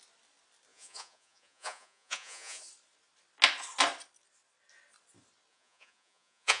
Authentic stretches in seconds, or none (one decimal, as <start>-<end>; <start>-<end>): 0.0-0.7; 2.6-5.5